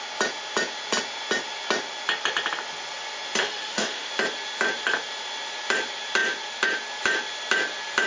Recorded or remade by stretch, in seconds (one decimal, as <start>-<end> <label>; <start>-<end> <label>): 0.0-3.4 recorded; 3.4-4.1 remade; 4.1-8.1 recorded